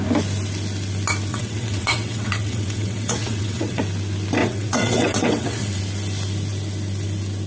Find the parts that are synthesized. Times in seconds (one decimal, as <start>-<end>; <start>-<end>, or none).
1.3-3.8; 4.4-5.8